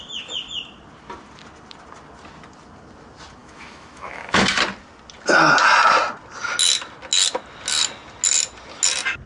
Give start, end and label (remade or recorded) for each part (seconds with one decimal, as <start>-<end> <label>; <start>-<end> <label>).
0.0-3.4 recorded; 3.4-4.6 remade; 4.6-9.3 recorded